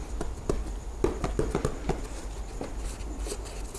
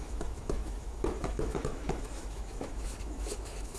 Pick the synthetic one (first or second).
second